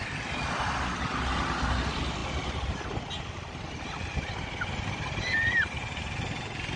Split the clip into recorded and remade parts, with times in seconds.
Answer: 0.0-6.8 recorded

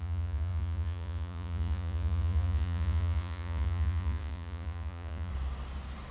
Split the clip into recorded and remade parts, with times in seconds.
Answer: 0.0-5.3 remade; 5.3-6.1 recorded

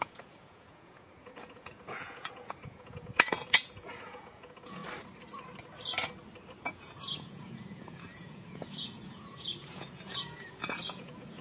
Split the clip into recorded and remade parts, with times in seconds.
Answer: 0.0-4.8 remade; 4.8-6.7 recorded; 6.7-11.4 remade

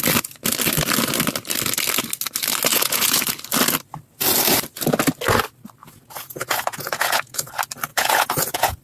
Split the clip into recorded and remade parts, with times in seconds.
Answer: 0.0-2.7 recorded; 2.7-3.2 remade; 3.2-5.8 recorded; 5.8-7.5 remade; 7.5-7.9 recorded; 7.9-8.8 remade